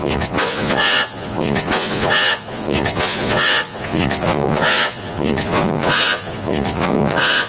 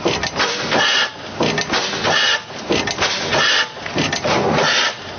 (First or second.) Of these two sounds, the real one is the second